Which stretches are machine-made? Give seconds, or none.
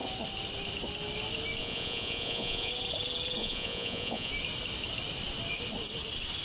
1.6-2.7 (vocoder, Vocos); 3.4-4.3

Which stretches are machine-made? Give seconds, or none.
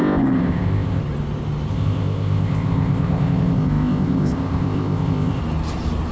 0.0-1.0 (codec, ZipCodec); 1.7-5.4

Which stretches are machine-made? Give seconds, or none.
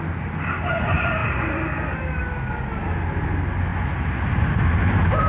none